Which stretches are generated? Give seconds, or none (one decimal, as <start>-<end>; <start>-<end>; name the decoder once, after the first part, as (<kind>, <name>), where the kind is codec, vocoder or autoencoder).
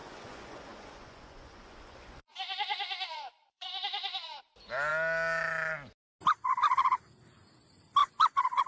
0.0-4.4 (vocoder, Vocos); 8.0-8.7